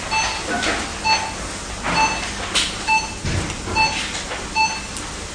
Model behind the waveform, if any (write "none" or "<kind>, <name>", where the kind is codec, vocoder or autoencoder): none